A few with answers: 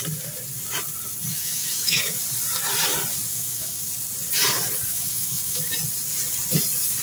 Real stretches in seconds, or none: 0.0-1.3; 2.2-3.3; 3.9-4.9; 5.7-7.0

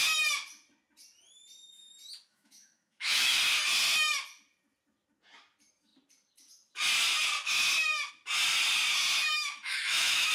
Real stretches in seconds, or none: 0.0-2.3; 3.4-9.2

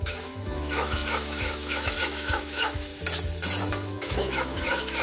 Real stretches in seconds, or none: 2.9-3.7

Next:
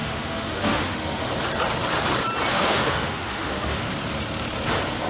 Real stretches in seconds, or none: 1.3-2.5; 3.9-5.1

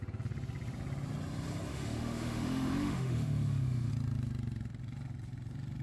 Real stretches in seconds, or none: 0.0-1.7; 3.9-5.8

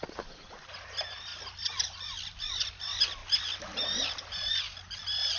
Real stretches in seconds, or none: 0.0-5.4

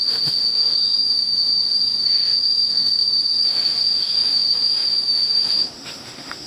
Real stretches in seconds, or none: none